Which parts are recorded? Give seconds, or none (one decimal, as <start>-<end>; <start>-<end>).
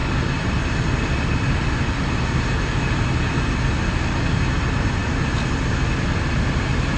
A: 0.0-7.0